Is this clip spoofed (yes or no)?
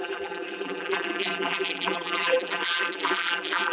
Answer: yes